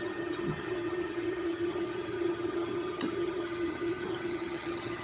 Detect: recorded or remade remade